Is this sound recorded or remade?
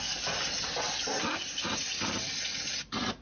recorded